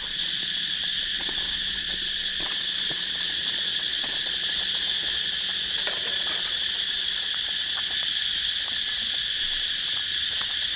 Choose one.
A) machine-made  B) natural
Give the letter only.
A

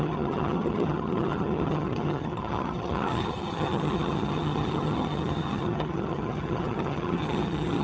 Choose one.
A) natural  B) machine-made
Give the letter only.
B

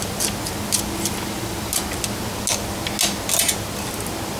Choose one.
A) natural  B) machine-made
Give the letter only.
A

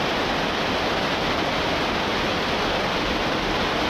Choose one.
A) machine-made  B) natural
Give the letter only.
A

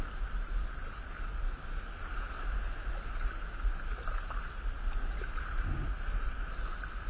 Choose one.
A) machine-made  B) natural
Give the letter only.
B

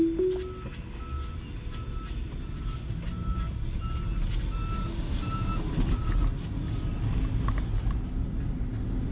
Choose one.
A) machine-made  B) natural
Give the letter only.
B